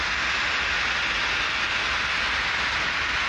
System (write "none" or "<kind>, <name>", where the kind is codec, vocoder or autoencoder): none